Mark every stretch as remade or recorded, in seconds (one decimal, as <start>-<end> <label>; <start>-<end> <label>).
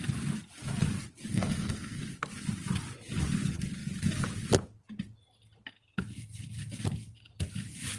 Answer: 0.0-1.3 recorded; 1.3-2.0 remade; 2.0-8.0 recorded